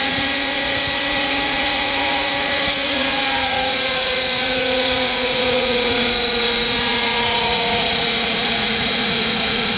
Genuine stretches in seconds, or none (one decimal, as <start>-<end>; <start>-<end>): none